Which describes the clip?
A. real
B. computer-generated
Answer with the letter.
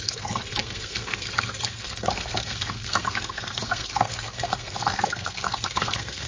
B